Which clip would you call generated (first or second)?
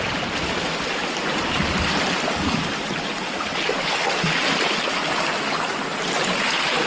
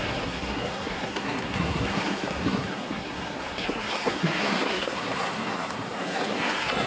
second